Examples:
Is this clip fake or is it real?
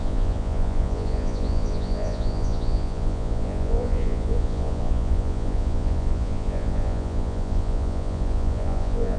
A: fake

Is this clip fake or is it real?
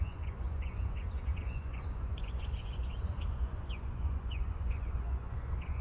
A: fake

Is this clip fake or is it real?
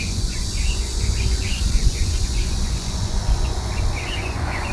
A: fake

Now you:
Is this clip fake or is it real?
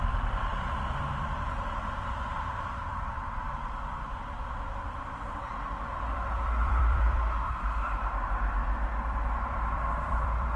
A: fake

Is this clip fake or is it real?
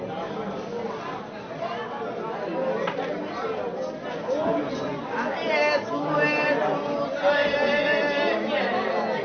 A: real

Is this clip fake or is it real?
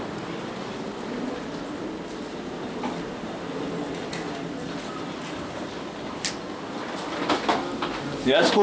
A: real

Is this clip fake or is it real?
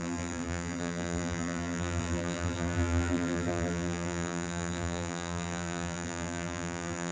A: fake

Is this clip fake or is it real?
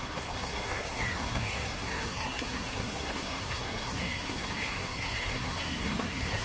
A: fake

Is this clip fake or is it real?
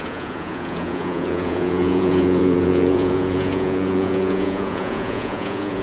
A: fake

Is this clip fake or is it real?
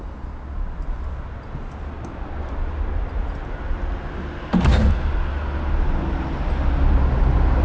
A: real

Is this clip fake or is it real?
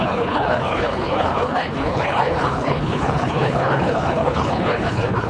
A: fake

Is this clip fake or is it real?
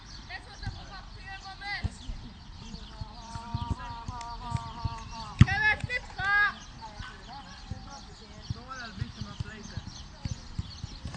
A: real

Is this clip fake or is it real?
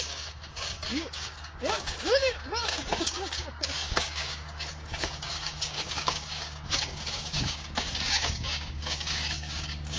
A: fake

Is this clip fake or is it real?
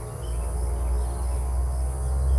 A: real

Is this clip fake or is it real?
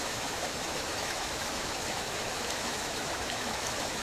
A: fake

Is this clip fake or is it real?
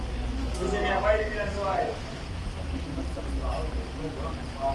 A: real